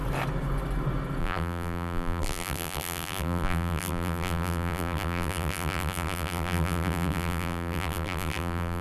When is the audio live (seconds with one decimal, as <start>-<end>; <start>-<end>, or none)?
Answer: 0.0-1.2